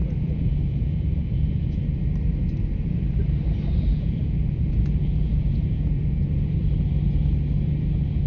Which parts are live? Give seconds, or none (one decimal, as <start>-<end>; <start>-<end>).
2.0-3.9; 6.5-8.3